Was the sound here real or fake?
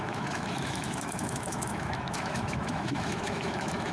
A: fake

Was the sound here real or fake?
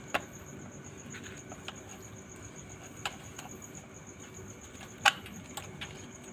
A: real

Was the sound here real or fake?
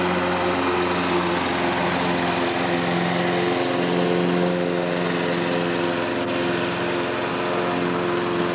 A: real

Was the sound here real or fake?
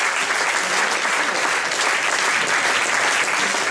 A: real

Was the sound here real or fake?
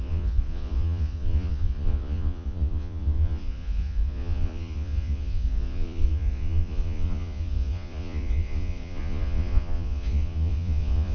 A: fake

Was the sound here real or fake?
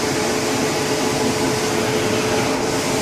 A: real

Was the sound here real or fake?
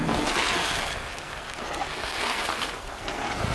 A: fake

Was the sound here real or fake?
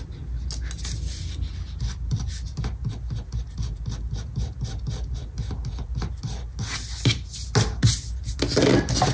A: real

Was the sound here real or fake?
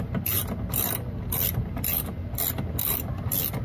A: real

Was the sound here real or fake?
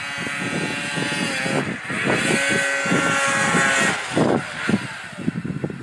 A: real